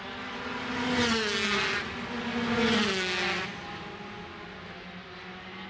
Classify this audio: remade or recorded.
recorded